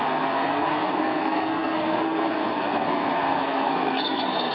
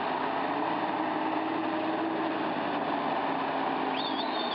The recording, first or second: second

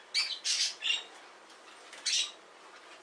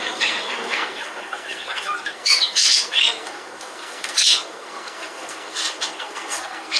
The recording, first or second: first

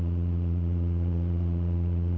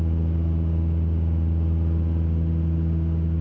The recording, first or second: second